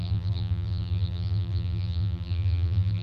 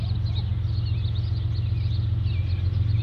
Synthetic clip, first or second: first